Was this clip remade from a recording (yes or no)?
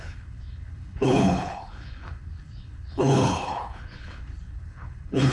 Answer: yes